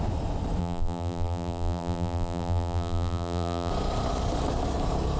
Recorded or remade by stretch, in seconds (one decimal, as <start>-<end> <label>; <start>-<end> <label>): 0.0-0.6 recorded; 0.6-3.7 remade; 3.7-5.2 recorded